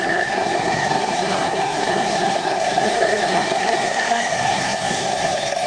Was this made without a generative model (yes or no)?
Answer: no